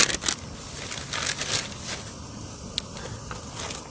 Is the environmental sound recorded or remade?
recorded